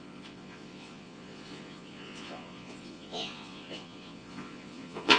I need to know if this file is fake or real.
fake